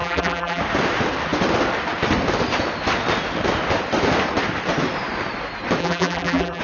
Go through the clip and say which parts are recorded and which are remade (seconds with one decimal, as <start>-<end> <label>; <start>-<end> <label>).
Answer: 0.0-0.6 remade; 0.6-5.8 recorded; 5.8-6.6 remade